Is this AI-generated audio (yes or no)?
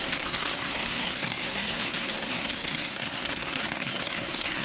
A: yes